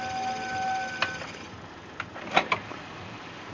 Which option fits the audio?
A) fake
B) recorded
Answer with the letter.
B